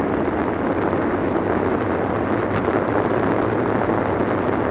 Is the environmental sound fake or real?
real